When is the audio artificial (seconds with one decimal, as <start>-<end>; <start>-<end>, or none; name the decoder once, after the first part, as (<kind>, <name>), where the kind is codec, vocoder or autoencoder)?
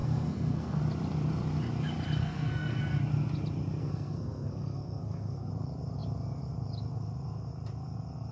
0.0-0.8 (codec, SNAC); 2.2-2.8; 3.8-5.5